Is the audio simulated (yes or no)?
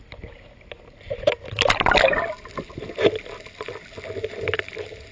no